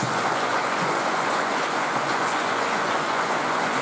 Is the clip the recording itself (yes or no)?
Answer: no